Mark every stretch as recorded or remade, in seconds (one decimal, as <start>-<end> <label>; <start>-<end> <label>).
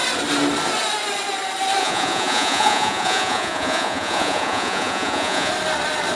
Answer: 0.0-1.8 recorded; 1.8-5.5 remade; 5.5-6.2 recorded